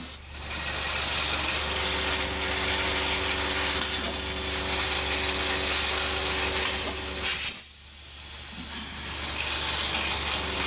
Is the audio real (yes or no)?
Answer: yes